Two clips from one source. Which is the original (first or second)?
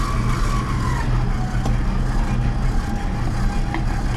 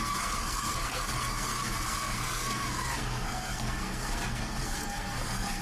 first